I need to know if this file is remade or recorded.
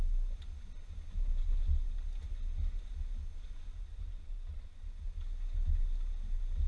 recorded